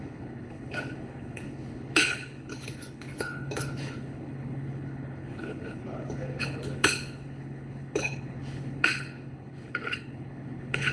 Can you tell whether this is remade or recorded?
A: remade